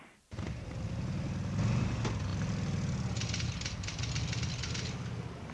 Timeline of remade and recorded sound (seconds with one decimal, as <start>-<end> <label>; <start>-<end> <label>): 0.0-5.5 recorded